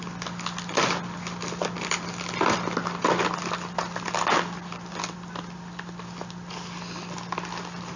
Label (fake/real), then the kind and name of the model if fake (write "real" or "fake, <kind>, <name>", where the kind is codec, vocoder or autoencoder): real